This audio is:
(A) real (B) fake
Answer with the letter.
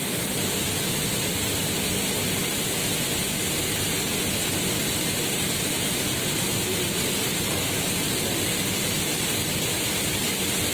A